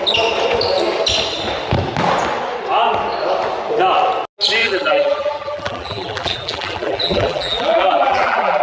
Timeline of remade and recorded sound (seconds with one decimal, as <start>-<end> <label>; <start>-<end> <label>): 0.0-4.6 recorded; 4.6-8.6 remade